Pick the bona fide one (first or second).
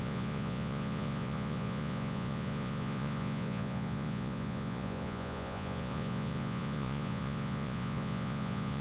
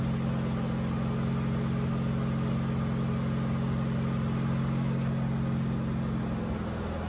second